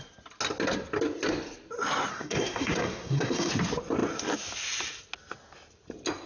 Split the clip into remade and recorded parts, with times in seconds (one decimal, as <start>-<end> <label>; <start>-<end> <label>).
0.0-2.1 recorded; 2.1-3.5 remade; 3.5-6.3 recorded